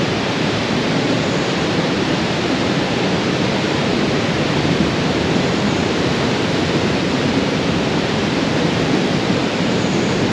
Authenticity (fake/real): fake